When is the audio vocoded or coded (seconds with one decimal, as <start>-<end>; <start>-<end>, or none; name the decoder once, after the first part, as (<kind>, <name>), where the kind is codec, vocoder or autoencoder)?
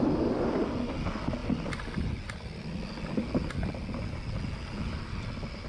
none